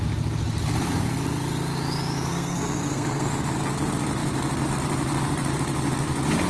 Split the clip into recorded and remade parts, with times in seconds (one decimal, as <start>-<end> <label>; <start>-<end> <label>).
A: 0.0-2.3 recorded; 2.3-3.3 remade; 3.3-6.5 recorded